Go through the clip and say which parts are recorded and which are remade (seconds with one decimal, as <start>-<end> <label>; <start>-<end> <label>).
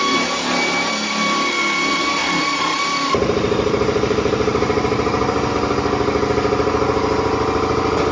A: 0.0-2.2 recorded; 2.2-5.5 remade; 5.5-8.1 recorded